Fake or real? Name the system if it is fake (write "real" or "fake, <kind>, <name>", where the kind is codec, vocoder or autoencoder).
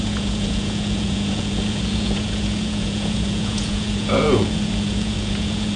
fake, vocoder, Vocos